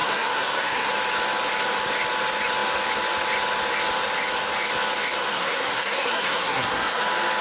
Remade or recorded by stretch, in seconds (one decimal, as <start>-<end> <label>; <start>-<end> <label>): 0.0-0.9 remade; 0.9-5.3 recorded; 5.3-7.0 remade; 7.0-7.4 recorded